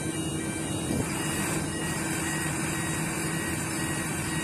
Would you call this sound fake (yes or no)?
no